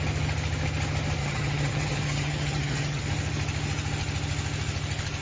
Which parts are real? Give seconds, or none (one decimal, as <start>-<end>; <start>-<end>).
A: 0.0-1.2; 3.0-5.2